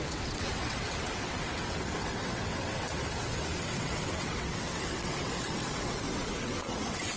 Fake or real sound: fake